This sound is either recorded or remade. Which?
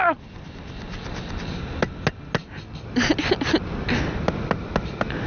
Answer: recorded